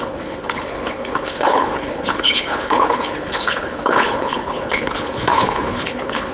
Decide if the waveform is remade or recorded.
remade